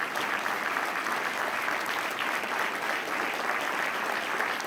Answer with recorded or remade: recorded